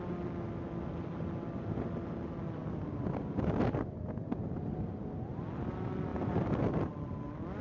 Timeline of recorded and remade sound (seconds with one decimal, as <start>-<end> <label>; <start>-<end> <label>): 0.0-2.6 recorded; 2.6-3.4 remade; 3.4-6.1 recorded; 6.1-6.6 remade; 6.6-7.6 recorded